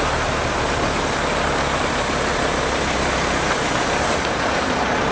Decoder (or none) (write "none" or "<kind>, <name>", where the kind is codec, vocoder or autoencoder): vocoder, BigVGAN v2